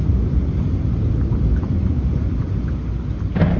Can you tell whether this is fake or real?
real